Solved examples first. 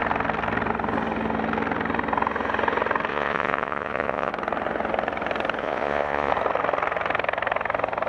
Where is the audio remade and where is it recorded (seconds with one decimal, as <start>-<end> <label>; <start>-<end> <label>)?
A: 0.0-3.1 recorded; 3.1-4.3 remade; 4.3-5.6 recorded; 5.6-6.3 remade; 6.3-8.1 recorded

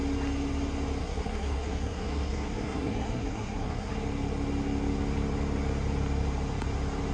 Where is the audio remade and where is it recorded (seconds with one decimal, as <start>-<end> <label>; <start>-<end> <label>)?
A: 0.0-1.0 recorded; 1.0-3.9 remade; 3.9-7.1 recorded

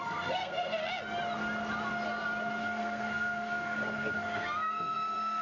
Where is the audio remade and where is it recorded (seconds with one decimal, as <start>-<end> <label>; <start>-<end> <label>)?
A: 0.0-0.8 remade; 0.8-2.6 recorded; 2.6-5.4 remade

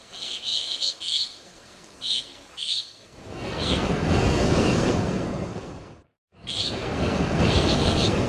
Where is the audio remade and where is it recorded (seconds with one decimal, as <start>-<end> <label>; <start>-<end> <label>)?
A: 0.0-8.3 remade

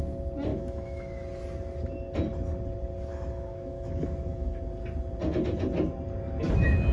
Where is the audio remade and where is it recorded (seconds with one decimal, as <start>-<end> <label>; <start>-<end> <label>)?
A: 0.0-0.5 recorded; 0.5-1.2 remade; 1.2-3.1 recorded; 3.1-4.6 remade; 4.6-6.9 recorded

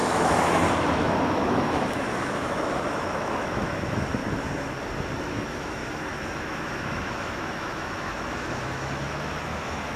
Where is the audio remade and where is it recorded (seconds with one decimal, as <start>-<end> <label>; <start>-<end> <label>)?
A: 0.0-4.2 remade; 4.2-5.2 recorded; 5.2-10.0 remade

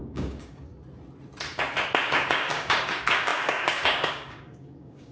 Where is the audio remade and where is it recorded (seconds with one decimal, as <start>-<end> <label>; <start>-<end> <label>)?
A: 0.0-0.7 remade; 0.7-2.0 recorded; 2.0-5.1 remade